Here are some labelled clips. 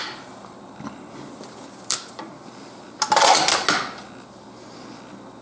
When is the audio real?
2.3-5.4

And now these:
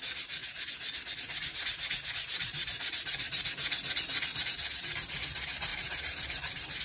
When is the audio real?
0.0-5.7

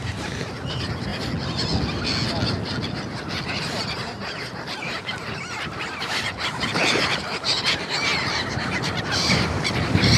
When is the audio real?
1.1-3.6

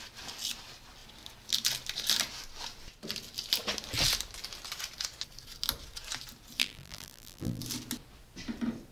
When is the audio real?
0.0-6.6; 7.6-8.9

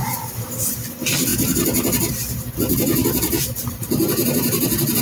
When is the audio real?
0.0-5.0

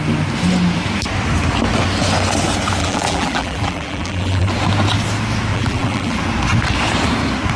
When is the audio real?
0.0-2.8; 4.5-5.5; 6.2-7.6